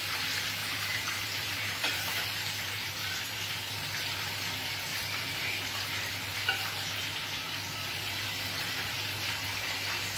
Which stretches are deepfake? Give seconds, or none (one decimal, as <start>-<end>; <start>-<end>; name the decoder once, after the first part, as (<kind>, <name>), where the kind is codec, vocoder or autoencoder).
0.6-3.6 (vocoder, BigVGAN v2)